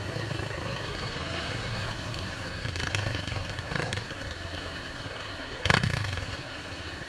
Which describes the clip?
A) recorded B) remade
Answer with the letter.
B